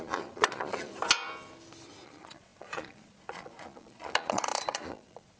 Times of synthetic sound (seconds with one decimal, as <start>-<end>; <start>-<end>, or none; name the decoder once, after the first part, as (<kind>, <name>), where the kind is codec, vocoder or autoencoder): 0.0-0.9 (vocoder, Vocos); 2.0-5.4